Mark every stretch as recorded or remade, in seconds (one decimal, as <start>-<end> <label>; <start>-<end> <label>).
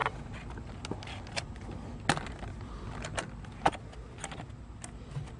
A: 0.0-5.4 recorded